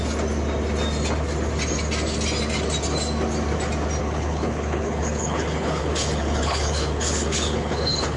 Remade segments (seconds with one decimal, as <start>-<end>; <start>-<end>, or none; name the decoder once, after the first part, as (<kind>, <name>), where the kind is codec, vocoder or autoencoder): 4.0-8.2 (codec, HILCodec)